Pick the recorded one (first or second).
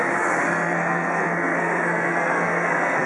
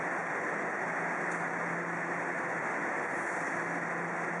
second